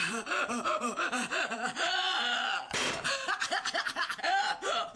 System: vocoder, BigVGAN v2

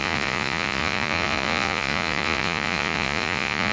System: vocoder, Vocos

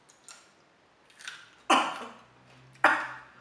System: none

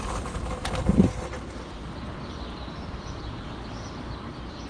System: none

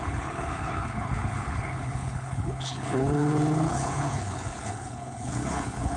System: codec, HILCodec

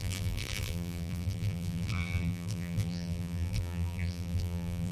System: vocoder, BigVGAN v2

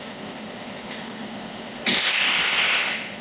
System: codec, ZipCodec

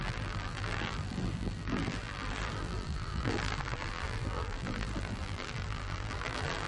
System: vocoder, BigVGAN v2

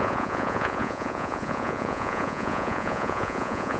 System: vocoder, Vocos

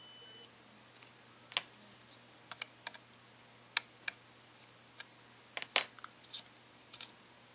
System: none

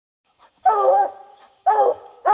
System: codec, DAC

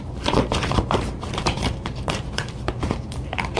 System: vocoder, BigVGAN v2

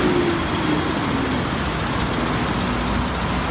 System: none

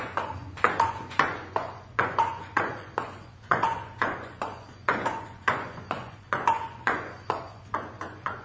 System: vocoder, Vocos